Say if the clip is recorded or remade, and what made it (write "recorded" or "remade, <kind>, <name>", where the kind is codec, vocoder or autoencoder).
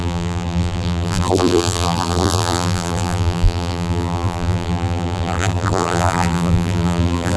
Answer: remade, vocoder, BigVGAN v2